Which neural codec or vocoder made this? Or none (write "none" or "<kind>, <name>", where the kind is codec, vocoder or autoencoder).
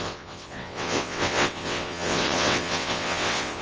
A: vocoder, WaveNeXt